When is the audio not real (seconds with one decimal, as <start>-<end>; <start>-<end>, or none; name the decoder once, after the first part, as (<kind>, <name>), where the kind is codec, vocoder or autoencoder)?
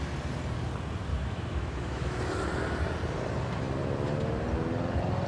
1.1-2.2 (autoencoder, DAC-VAE)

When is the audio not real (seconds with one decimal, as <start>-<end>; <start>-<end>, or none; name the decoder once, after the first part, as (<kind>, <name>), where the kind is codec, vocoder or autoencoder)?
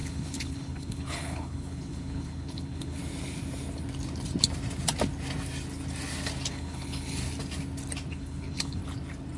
0.0-3.0 (codec, HILCodec); 6.5-7.2; 8.1-8.8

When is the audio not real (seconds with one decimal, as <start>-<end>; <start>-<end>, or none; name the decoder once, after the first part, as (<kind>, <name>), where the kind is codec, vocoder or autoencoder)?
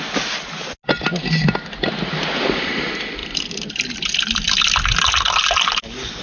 none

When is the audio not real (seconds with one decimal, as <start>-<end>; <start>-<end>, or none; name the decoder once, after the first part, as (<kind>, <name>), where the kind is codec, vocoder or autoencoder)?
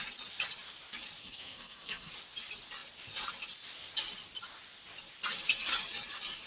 1.2-2.1 (codec, SNAC)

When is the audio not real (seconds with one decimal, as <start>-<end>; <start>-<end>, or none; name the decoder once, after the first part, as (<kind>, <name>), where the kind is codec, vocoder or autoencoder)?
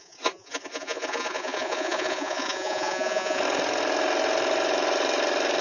0.0-3.4 (vocoder, Vocos)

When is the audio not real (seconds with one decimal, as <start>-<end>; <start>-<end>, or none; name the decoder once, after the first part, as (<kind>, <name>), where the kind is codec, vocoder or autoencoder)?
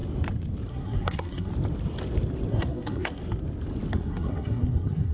0.7-1.5 (codec, SNAC); 2.5-3.2; 3.9-5.1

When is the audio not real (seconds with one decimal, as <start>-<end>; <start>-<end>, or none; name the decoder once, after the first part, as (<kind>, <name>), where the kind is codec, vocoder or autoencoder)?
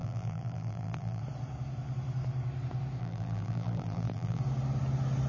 0.0-1.2 (vocoder, BigVGAN v2); 3.0-4.4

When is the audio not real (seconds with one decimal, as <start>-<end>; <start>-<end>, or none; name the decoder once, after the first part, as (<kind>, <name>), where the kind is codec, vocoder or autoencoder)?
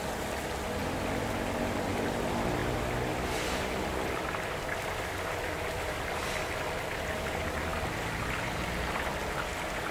none